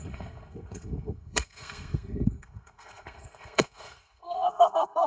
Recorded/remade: remade